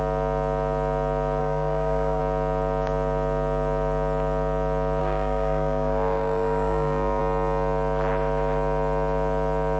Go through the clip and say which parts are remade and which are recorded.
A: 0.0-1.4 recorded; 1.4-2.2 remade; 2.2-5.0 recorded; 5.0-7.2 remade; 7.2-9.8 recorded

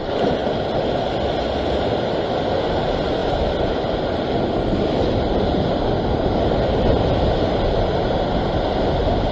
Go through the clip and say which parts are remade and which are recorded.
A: 0.0-9.3 recorded

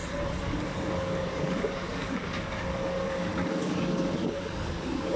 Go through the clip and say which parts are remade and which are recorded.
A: 0.0-0.5 recorded; 0.5-5.2 remade